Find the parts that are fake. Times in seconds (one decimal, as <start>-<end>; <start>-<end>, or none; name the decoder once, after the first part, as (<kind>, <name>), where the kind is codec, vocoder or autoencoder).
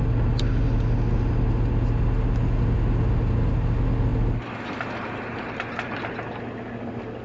none